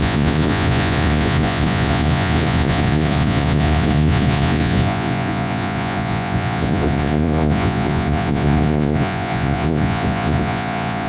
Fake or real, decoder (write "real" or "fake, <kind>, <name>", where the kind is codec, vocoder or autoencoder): fake, vocoder, Vocos